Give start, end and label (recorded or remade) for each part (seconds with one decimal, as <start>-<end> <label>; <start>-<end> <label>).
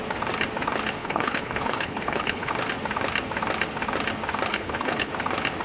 0.0-1.0 recorded; 1.0-2.5 remade; 2.5-4.5 recorded; 4.5-5.1 remade; 5.1-5.6 recorded